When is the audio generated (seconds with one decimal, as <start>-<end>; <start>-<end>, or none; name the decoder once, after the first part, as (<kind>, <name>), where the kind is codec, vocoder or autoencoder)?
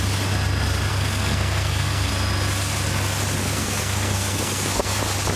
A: 0.9-2.1 (codec, SNAC); 3.4-5.0